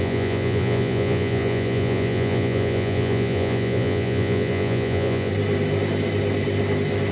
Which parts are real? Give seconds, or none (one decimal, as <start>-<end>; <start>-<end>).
5.3-7.1